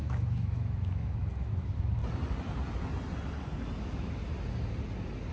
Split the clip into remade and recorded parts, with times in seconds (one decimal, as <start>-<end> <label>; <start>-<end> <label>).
0.0-2.0 remade; 2.0-3.8 recorded; 3.8-4.2 remade; 4.2-5.3 recorded